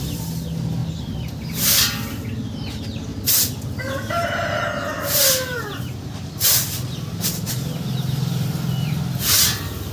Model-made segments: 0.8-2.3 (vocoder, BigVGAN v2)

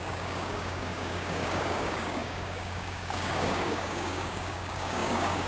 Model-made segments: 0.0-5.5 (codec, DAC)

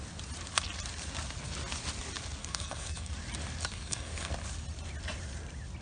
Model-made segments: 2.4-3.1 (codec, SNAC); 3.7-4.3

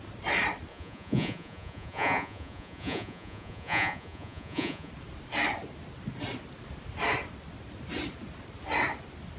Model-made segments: 0.7-4.9 (vocoder, Vocos)

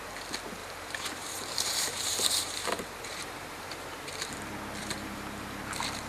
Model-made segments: 0.6-4.3 (vocoder, BigVGAN v2); 4.8-5.6

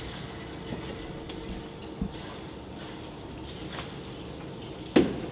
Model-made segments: none

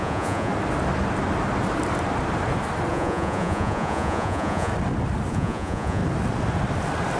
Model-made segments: 0.0-0.5 (vocoder, Vocos); 2.9-4.7; 5.3-6.0